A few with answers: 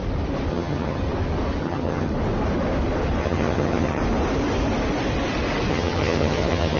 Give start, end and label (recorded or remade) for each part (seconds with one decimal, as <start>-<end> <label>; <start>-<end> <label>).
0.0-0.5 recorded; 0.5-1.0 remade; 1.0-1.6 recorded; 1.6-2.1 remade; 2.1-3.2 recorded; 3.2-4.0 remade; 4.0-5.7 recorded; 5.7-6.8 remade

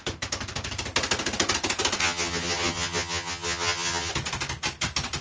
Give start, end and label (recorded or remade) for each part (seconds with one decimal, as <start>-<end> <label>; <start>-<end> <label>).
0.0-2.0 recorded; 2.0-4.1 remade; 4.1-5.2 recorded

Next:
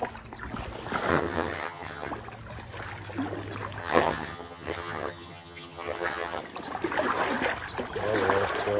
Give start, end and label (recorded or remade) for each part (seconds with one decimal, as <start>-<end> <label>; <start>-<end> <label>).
0.0-1.1 recorded; 1.1-2.1 remade; 2.1-3.8 recorded; 3.8-6.4 remade; 6.4-8.8 recorded

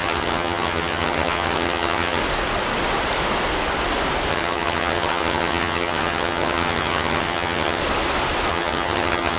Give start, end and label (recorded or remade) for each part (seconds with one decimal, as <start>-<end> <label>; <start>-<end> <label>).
0.0-2.2 remade; 2.2-4.3 recorded; 4.3-7.8 remade; 7.8-8.5 recorded; 8.5-9.4 remade

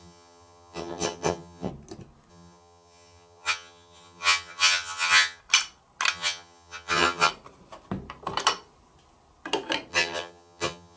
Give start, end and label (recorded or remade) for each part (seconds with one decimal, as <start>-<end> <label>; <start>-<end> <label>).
0.0-1.7 remade; 1.7-2.3 recorded; 2.3-5.4 remade; 5.4-6.1 recorded; 6.1-7.3 remade; 7.3-9.9 recorded; 9.9-11.0 remade